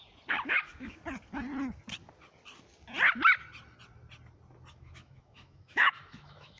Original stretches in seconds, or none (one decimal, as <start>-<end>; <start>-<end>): 0.0-0.5; 1.0-4.7